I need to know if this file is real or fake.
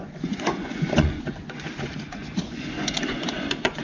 fake